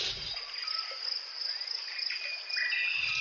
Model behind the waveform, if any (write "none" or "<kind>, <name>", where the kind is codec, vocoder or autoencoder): none